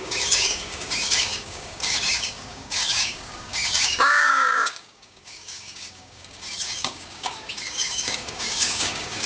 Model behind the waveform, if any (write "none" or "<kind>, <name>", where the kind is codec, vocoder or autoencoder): codec, DAC